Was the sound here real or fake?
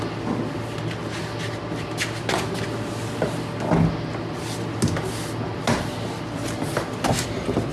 real